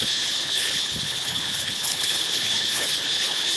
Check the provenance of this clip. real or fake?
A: fake